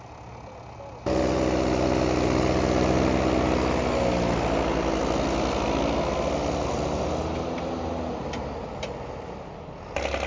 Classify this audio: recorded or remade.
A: recorded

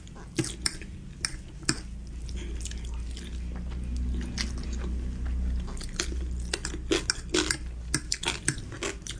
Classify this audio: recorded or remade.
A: recorded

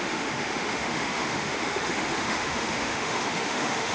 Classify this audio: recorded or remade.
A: remade